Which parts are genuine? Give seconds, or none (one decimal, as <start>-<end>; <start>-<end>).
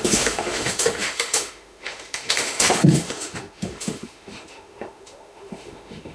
none